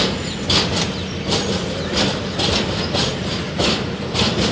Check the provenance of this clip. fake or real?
real